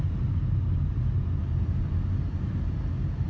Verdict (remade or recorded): recorded